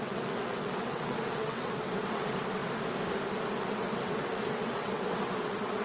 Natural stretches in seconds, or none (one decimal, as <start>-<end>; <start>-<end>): 2.6-3.5